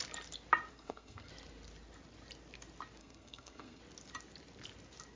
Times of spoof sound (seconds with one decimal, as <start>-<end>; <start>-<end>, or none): 0.7-1.3; 3.0-3.8

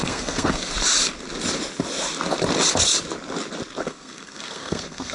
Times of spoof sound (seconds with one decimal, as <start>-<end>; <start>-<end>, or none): 0.0-0.7; 3.8-5.1

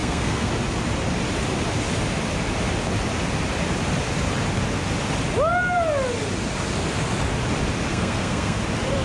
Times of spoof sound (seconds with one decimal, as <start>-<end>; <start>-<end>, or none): 0.0-0.5; 7.9-8.6

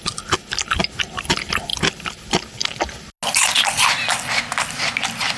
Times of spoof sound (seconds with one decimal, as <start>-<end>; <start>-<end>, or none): none

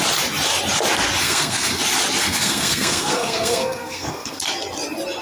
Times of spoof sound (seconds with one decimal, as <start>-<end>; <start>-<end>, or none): 1.2-1.8; 2.2-4.4

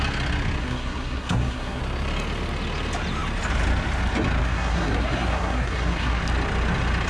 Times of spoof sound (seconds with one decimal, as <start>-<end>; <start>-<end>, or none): 0.6-1.8; 4.4-6.2